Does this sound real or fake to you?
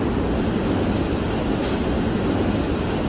real